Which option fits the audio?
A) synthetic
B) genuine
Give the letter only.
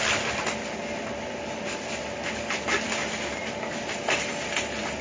B